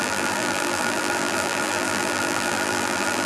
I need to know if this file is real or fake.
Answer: fake